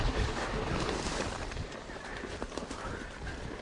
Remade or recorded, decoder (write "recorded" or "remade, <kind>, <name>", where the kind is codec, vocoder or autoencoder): recorded